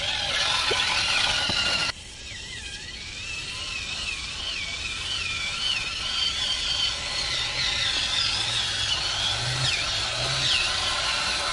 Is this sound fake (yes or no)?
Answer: no